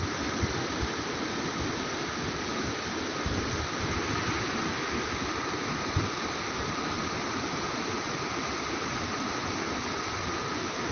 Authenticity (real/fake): real